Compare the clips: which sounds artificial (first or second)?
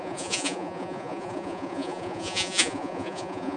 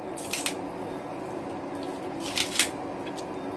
first